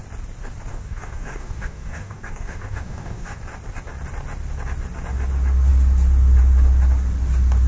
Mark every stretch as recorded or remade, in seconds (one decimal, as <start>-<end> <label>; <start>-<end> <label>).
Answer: 0.0-0.7 recorded; 0.7-3.4 remade; 3.4-7.7 recorded